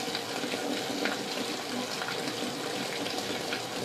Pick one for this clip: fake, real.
real